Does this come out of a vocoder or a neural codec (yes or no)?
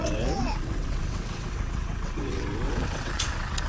yes